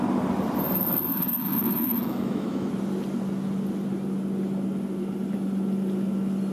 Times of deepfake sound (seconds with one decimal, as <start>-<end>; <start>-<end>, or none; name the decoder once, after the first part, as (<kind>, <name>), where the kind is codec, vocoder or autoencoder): 1.1-2.7 (autoencoder, DAC-VAE)